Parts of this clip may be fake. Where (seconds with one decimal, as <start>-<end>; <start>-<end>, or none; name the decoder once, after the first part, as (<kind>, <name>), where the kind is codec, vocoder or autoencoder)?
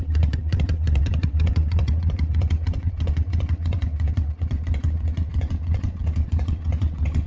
0.0-7.3 (vocoder, WaveNeXt)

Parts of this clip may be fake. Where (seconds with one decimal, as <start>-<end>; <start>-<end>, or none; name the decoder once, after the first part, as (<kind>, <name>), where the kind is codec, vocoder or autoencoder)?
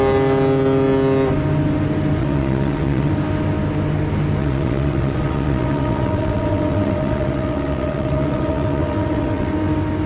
2.2-3.1 (vocoder, WaveNeXt); 4.4-9.5